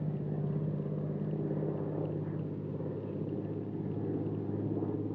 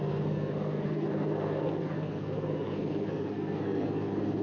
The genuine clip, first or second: first